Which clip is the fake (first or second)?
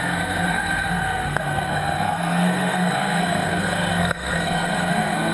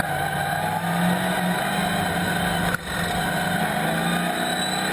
first